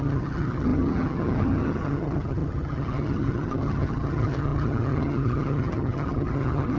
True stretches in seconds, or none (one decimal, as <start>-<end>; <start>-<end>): none